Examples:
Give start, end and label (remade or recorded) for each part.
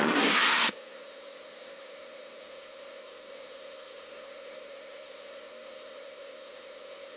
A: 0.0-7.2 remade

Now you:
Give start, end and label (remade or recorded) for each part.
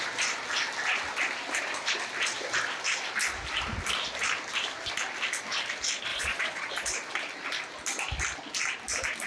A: 0.0-6.1 recorded; 6.1-6.7 remade; 6.7-9.3 recorded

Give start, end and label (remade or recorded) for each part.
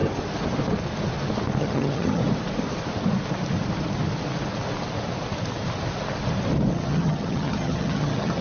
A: 0.0-1.6 recorded; 1.6-2.2 remade; 2.2-6.7 recorded; 6.7-8.4 remade